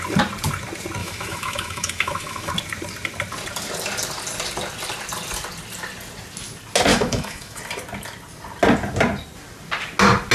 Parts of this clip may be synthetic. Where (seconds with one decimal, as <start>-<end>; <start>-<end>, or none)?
1.0-2.5; 6.9-7.6